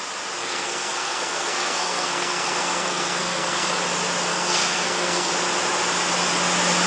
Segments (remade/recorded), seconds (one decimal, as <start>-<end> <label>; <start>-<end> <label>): 0.0-0.4 recorded; 0.4-3.8 remade; 3.8-4.3 recorded; 4.3-5.3 remade; 5.3-6.9 recorded